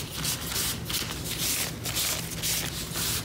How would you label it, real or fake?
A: real